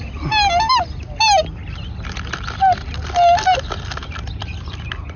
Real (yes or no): yes